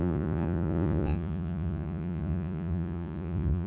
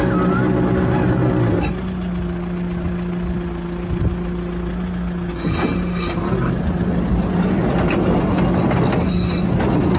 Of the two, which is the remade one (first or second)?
first